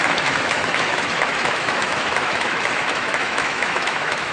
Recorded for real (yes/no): no